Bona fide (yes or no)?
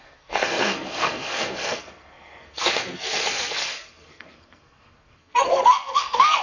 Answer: no